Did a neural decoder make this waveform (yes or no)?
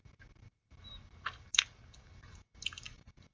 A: no